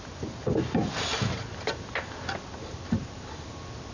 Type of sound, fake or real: real